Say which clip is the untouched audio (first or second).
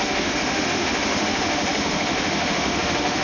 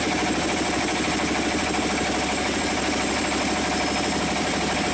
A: second